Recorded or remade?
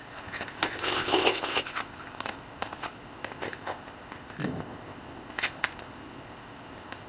remade